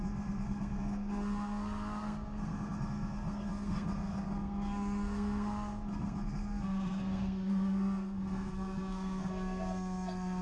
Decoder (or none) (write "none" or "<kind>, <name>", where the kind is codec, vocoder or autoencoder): codec, SNAC